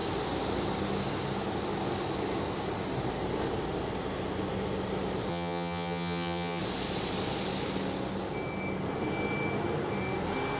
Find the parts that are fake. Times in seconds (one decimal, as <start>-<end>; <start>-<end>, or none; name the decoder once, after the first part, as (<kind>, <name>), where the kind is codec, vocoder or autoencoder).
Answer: 5.3-6.6 (vocoder, HiFi-GAN)